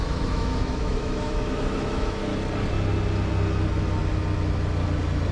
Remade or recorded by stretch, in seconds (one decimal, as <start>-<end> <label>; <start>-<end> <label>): 0.0-2.3 remade; 2.3-5.3 recorded